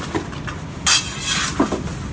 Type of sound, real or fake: real